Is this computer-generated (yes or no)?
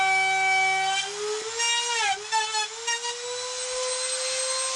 no